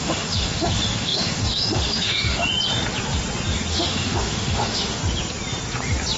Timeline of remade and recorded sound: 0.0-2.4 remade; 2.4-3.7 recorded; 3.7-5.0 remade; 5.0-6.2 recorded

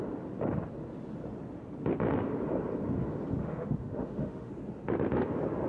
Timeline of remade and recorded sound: 0.0-3.4 recorded; 3.4-4.5 remade; 4.5-5.7 recorded

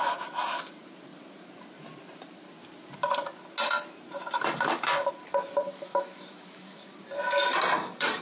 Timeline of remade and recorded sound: 0.0-5.7 recorded; 5.7-7.0 remade; 7.0-8.2 recorded

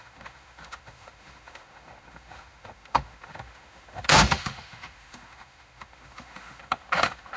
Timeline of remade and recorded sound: 0.0-7.4 remade

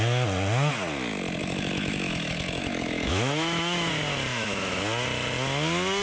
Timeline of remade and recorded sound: 0.0-1.4 recorded; 1.4-3.9 remade; 3.9-4.3 recorded; 4.3-4.8 remade; 4.8-6.0 recorded

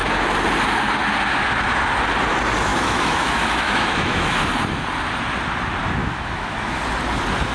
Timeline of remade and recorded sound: 0.0-2.7 recorded; 2.7-4.5 remade; 4.5-6.0 recorded; 6.0-6.8 remade; 6.8-7.5 recorded

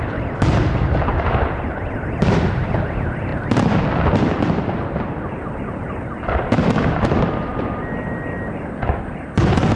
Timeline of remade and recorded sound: 0.0-9.8 recorded